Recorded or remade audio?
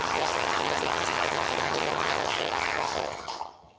remade